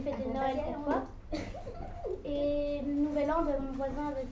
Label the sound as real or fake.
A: real